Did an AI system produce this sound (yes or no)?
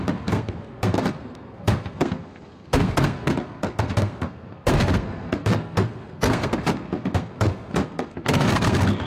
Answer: yes